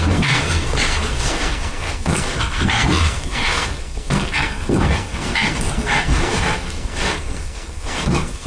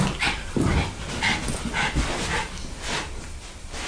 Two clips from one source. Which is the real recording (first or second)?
second